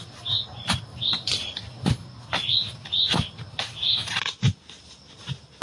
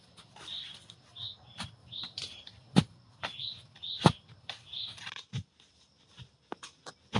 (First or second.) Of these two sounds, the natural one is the first